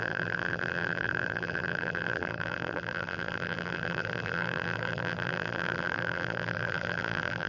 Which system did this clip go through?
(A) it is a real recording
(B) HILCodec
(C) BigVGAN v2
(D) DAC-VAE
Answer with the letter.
C